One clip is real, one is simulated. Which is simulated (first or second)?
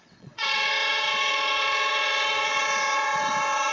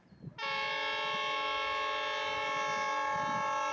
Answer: first